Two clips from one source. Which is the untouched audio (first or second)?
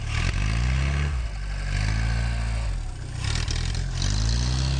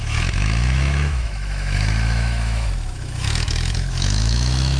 first